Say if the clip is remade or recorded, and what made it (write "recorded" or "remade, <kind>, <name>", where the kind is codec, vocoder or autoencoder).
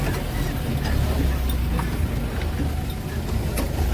recorded